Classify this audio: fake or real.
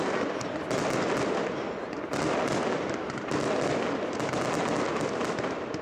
real